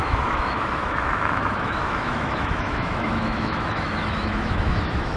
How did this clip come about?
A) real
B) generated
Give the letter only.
B